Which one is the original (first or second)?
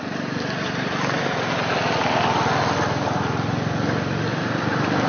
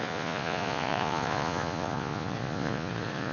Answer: first